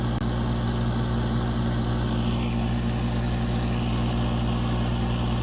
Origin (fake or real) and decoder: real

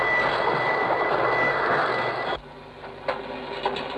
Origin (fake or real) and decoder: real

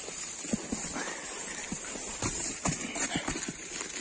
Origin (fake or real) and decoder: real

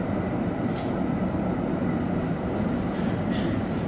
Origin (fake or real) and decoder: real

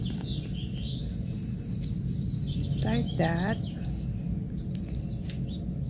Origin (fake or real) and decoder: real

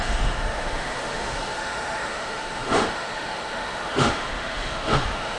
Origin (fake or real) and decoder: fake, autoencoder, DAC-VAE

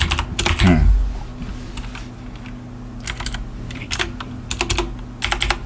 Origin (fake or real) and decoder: real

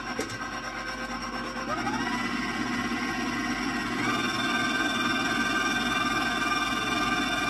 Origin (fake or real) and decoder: real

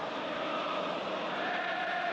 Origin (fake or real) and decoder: real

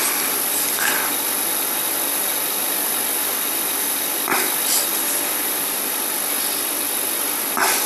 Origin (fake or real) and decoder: real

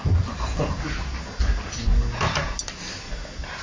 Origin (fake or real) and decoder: real